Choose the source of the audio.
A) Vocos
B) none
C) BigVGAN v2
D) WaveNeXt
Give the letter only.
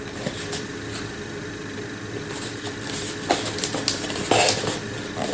B